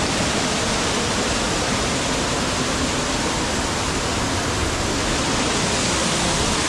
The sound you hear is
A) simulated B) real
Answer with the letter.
B